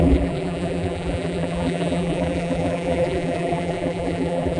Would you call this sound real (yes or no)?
no